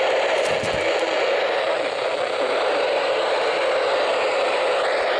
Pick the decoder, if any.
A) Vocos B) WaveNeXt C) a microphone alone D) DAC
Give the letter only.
C